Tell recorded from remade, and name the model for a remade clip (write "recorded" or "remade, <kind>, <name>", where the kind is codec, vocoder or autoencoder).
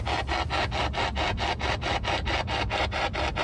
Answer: recorded